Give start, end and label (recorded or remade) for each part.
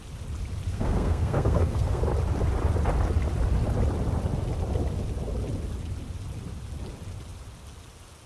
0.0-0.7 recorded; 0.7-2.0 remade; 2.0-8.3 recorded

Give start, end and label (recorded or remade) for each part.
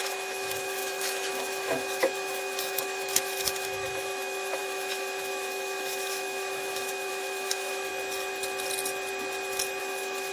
0.0-7.9 remade; 7.9-9.8 recorded; 9.8-10.3 remade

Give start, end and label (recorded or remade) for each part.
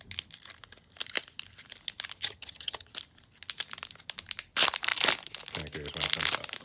0.0-2.2 recorded; 2.2-2.9 remade; 2.9-6.6 recorded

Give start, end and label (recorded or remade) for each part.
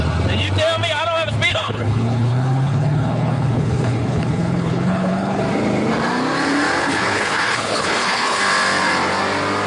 0.0-1.5 recorded; 1.5-5.4 remade; 5.4-6.8 recorded; 6.8-8.4 remade; 8.4-9.7 recorded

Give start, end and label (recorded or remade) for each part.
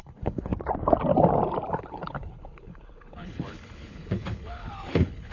0.0-0.5 remade; 0.5-1.7 recorded; 1.7-5.3 remade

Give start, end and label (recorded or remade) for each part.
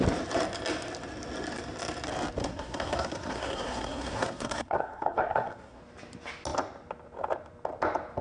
0.0-2.4 recorded; 2.4-5.8 remade; 5.8-8.2 recorded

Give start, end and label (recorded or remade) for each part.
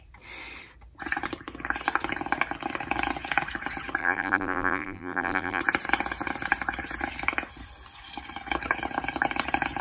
0.0-4.0 recorded; 4.0-5.6 remade; 5.6-9.8 recorded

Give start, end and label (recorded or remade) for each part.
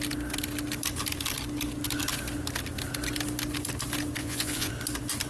0.0-4.2 recorded; 4.2-4.7 remade; 4.7-5.3 recorded